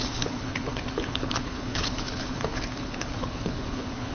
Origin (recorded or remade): remade